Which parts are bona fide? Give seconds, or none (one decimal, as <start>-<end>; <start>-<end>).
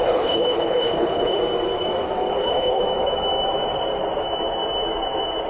1.4-2.3; 2.8-5.5